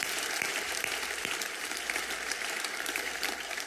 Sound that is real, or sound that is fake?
fake